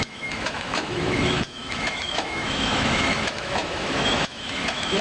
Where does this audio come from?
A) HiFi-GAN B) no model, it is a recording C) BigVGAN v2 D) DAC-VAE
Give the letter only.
D